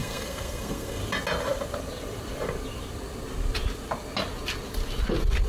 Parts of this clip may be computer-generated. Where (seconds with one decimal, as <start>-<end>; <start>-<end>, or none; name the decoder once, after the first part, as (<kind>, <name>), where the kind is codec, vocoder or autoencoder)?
0.0-1.0 (codec, SNAC)